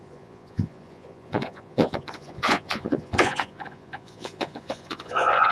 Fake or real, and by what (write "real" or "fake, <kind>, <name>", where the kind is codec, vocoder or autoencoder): fake, vocoder, Vocos